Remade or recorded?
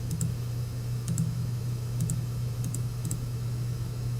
remade